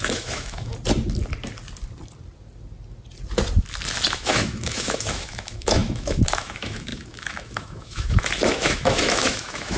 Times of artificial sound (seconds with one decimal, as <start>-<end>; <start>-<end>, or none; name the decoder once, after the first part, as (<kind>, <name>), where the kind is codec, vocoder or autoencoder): 0.0-0.7 (autoencoder, DAC-VAE); 4.1-9.8